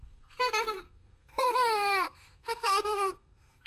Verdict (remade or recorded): remade